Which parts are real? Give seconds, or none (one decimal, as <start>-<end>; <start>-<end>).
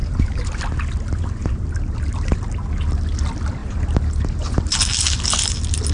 0.6-1.4; 2.5-3.6; 4.4-5.9